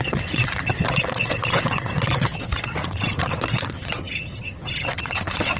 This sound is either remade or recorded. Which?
remade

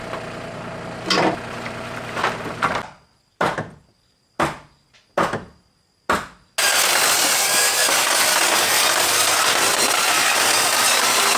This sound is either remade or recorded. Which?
recorded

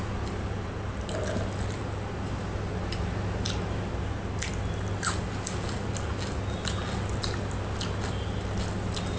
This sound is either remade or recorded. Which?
recorded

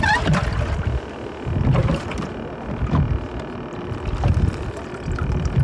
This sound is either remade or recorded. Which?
recorded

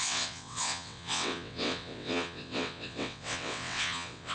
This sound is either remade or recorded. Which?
remade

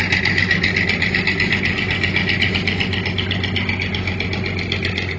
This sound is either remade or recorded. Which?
recorded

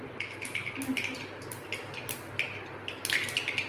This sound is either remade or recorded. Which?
recorded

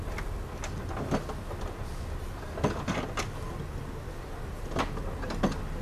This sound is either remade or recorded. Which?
recorded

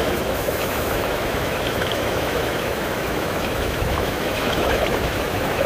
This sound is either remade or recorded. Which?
remade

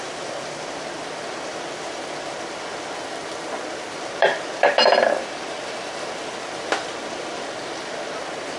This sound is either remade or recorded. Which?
remade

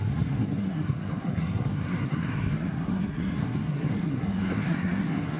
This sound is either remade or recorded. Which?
remade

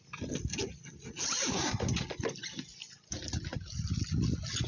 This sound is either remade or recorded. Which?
recorded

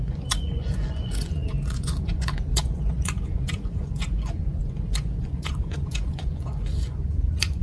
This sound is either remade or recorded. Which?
remade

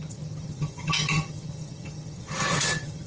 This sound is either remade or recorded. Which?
remade